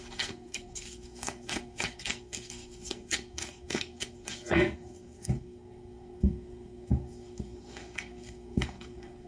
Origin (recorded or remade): remade